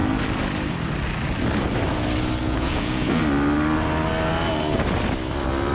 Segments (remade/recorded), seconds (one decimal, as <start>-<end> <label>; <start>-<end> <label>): 0.0-2.4 recorded; 2.4-3.2 remade; 3.2-5.7 recorded